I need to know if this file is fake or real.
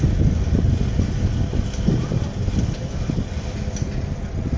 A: real